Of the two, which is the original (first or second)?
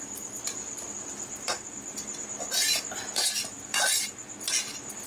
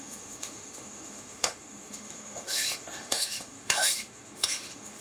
first